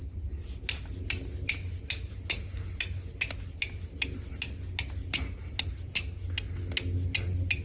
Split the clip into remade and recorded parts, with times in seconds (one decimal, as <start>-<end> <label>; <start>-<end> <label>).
0.0-7.6 recorded

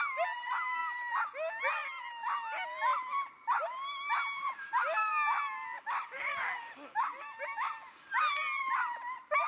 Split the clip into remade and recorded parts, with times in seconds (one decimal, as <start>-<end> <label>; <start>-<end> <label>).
0.0-9.5 recorded

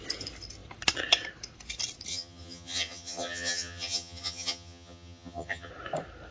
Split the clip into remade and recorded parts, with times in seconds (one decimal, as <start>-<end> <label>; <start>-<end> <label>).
0.0-2.1 recorded; 2.1-5.7 remade; 5.7-6.3 recorded